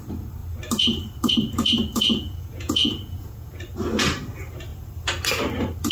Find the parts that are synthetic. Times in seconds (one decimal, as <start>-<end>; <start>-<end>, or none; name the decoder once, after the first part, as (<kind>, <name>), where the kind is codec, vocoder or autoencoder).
1.9-3.5 (vocoder, Vocos)